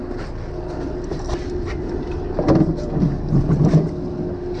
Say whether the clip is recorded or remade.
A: recorded